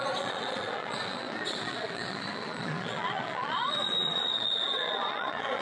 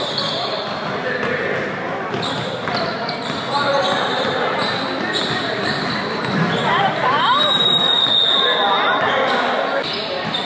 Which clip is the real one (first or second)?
second